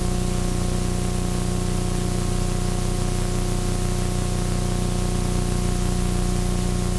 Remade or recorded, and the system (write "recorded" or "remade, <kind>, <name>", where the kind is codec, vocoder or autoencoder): recorded